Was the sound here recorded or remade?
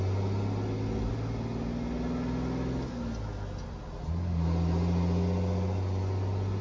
recorded